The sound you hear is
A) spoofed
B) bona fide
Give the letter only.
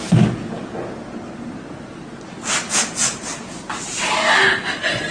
B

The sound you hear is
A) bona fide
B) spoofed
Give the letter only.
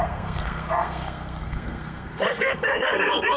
B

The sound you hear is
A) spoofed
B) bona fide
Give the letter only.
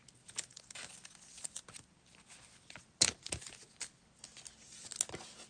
B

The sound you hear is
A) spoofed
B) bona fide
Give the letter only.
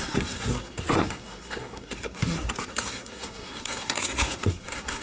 A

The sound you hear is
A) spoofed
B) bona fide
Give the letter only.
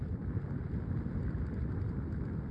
B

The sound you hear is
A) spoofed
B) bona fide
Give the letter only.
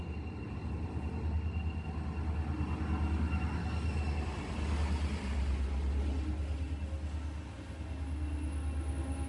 B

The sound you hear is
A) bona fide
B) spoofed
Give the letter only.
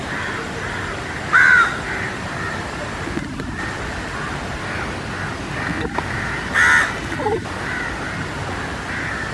A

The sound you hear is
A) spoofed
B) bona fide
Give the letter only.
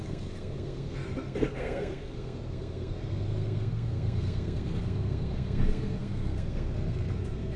A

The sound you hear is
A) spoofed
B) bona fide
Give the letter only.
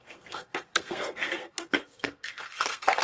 A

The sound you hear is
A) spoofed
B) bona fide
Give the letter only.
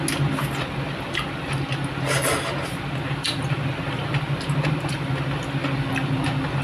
B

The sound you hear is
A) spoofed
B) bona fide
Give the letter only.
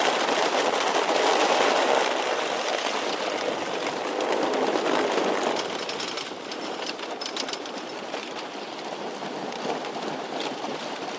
B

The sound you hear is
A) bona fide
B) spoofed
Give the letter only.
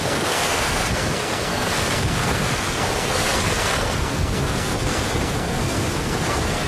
B